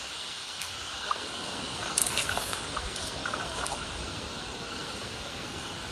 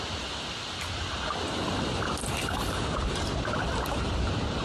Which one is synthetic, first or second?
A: first